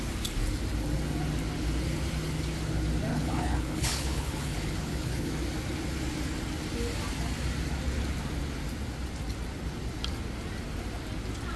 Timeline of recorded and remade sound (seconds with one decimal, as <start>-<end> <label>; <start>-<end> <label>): 0.0-3.1 recorded; 3.1-5.3 remade; 5.3-11.6 recorded